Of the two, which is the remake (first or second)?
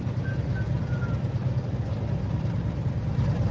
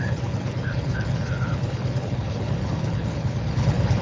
second